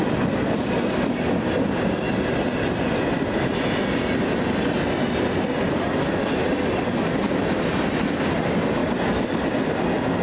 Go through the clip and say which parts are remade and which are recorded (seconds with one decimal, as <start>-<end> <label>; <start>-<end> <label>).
0.0-10.2 recorded